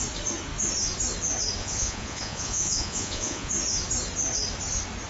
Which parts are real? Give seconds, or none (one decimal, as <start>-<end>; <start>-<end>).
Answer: 0.0-1.6; 3.5-5.1